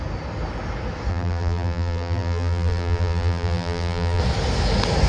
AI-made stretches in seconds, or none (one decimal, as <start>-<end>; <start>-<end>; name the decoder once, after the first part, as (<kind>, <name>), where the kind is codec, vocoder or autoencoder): 1.1-4.2 (vocoder, BigVGAN v2)